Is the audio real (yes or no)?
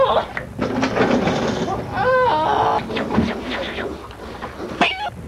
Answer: yes